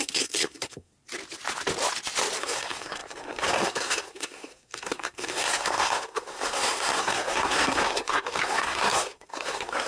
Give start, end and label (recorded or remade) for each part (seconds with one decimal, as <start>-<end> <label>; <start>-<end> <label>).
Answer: 0.0-0.9 remade; 0.9-2.4 recorded; 2.4-9.9 remade